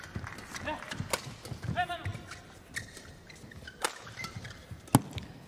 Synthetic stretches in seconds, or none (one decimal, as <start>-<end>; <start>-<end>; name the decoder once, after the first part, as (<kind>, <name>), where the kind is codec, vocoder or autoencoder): none